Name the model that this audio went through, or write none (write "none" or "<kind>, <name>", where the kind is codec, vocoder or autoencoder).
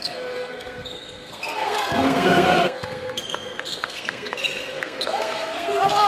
codec, SNAC